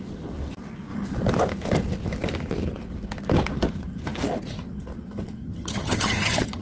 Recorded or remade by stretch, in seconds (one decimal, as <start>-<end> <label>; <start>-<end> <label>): 0.0-5.4 recorded; 5.4-6.6 remade